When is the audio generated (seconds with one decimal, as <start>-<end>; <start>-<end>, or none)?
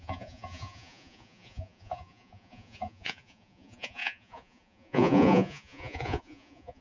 0.0-6.8